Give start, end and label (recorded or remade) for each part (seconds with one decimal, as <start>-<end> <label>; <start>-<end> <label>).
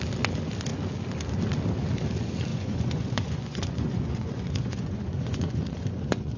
0.0-2.5 recorded; 2.5-6.4 remade